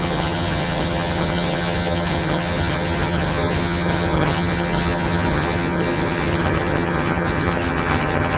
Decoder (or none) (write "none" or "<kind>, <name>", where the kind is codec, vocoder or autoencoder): vocoder, HiFi-GAN